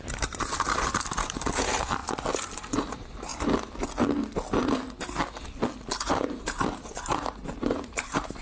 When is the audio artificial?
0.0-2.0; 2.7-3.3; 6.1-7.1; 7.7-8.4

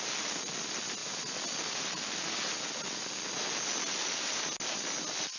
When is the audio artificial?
none

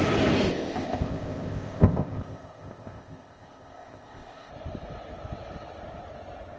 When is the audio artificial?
0.5-4.5

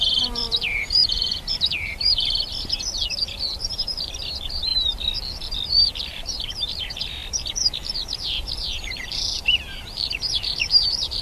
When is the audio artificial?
0.0-3.0; 3.6-4.7; 6.1-7.2; 7.9-11.2